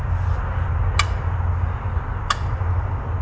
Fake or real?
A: real